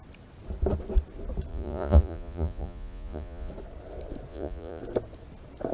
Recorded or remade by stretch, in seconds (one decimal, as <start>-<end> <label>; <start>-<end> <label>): 0.0-1.5 recorded; 1.5-3.5 remade; 3.5-4.3 recorded; 4.3-4.8 remade; 4.8-5.7 recorded